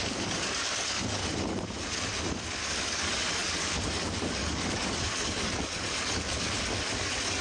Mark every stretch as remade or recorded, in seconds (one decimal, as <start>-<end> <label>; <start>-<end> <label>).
0.0-1.2 remade; 1.2-2.6 recorded; 2.6-7.4 remade